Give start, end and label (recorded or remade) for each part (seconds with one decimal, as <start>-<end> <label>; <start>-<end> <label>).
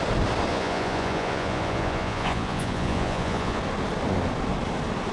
0.0-0.5 recorded; 0.5-3.6 remade; 3.6-5.1 recorded